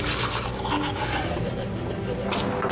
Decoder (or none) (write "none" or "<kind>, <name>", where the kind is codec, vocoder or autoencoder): none